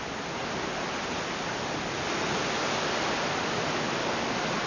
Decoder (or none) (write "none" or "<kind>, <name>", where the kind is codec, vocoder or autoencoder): none